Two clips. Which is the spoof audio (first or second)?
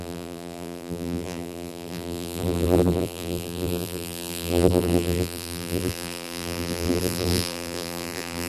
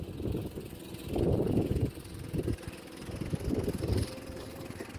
first